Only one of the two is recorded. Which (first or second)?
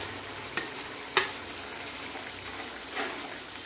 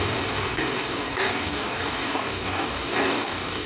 first